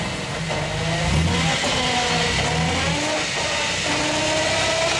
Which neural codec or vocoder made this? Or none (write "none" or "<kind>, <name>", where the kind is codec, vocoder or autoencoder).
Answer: none